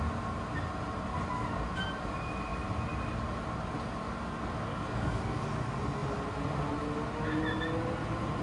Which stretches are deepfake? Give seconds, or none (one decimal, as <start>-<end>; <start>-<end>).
4.7-5.5